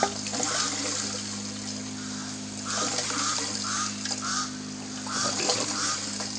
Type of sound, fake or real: real